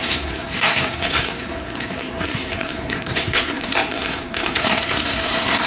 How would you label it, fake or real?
fake